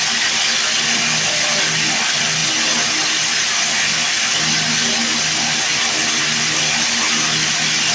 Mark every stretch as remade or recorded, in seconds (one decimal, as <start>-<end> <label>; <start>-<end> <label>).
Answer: 0.0-7.9 recorded